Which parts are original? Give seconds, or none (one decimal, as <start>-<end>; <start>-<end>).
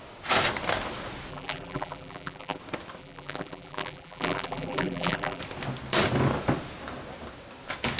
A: 0.0-1.3; 2.6-3.0; 5.4-8.0